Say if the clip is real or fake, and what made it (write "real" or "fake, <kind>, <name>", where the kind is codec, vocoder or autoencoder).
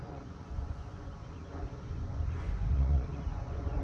fake, vocoder, Vocos